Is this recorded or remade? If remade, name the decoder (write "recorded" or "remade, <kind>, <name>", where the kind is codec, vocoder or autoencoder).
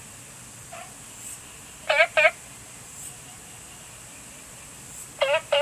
recorded